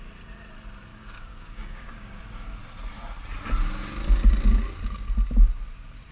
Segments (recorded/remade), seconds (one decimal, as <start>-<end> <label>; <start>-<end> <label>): 0.0-0.9 recorded; 0.9-2.2 remade; 2.2-6.1 recorded